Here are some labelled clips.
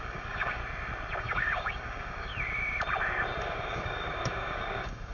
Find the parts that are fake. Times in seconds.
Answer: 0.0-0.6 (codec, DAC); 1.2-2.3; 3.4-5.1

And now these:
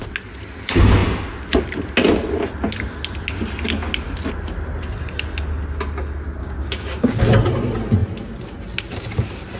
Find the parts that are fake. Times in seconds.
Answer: 6.4-7.3 (codec, DAC)